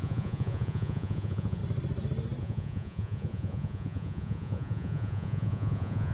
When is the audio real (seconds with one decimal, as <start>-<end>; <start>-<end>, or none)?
1.6-2.4